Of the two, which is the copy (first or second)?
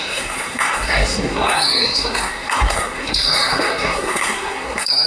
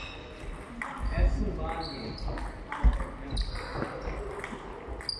first